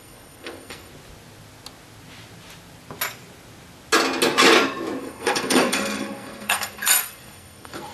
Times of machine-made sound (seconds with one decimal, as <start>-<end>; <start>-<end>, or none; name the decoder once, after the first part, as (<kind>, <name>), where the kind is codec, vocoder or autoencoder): 0.0-0.9 (codec, SNAC); 5.0-7.9